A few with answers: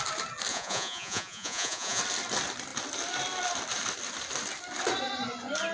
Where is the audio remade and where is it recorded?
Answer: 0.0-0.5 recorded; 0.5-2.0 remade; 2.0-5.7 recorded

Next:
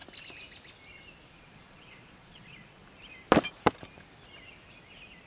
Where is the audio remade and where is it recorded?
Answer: 0.0-1.3 recorded; 1.3-2.8 remade; 2.8-5.3 recorded

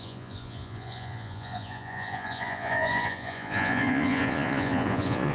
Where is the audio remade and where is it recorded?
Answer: 0.0-5.3 remade

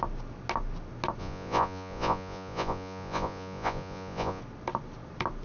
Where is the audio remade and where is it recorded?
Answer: 0.0-1.2 recorded; 1.2-4.4 remade; 4.4-5.4 recorded

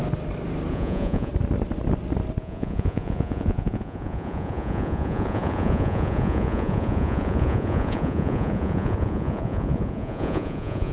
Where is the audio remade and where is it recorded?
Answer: 0.0-0.7 recorded; 0.7-1.3 remade; 1.3-2.4 recorded; 2.4-10.9 remade

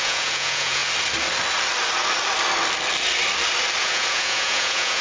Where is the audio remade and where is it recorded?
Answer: 0.0-0.8 remade; 0.8-3.8 recorded; 3.8-5.0 remade

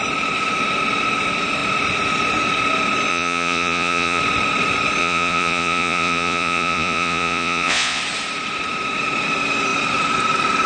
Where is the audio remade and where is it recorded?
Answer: 0.0-3.1 recorded; 3.1-4.2 remade; 4.2-5.0 recorded; 5.0-8.0 remade; 8.0-10.7 recorded